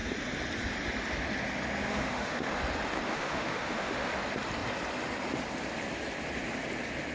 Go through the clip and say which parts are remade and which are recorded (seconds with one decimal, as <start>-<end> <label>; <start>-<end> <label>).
0.0-1.8 recorded; 1.8-2.5 remade; 2.5-3.1 recorded; 3.1-4.1 remade; 4.1-7.1 recorded